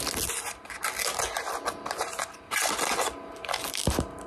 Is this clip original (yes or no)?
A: yes